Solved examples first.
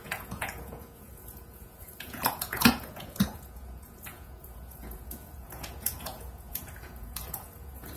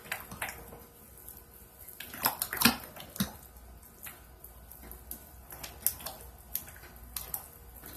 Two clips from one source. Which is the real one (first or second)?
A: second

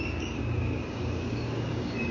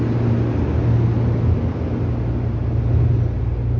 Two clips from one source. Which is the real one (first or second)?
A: second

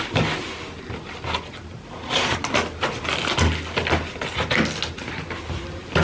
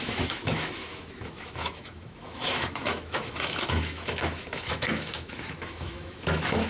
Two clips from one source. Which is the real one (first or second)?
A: first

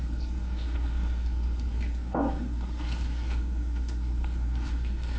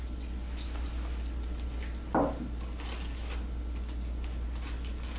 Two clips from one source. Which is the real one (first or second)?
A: second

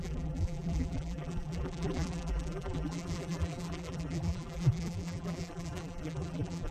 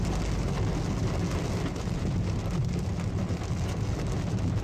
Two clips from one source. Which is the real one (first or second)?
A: second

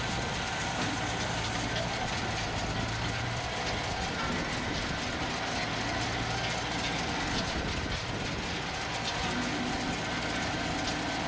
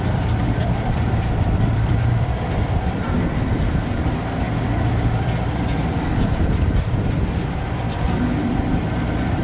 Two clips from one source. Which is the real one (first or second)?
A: first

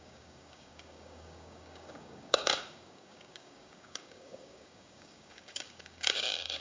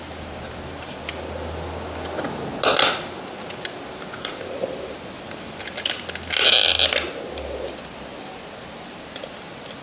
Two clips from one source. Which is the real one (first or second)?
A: second